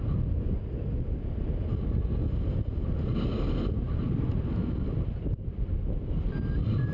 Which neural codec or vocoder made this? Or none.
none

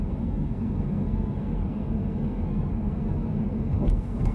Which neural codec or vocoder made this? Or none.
codec, SNAC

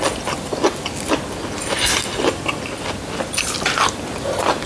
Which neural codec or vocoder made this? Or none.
none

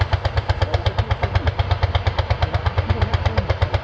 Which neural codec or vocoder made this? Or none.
none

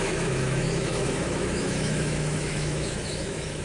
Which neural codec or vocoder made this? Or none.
autoencoder, DAC-VAE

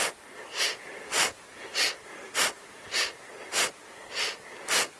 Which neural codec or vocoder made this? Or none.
none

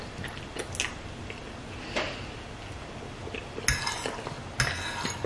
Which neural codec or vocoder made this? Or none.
none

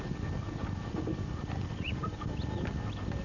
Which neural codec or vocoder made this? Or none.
none